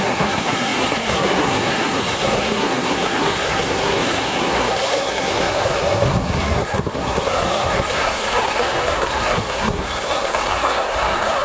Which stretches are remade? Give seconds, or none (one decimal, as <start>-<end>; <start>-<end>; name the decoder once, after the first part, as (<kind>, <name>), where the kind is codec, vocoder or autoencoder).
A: 0.0-11.4 (codec, SNAC)